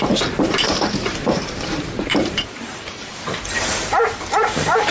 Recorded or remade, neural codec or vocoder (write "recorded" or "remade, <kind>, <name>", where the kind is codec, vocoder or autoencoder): remade, vocoder, BigVGAN v2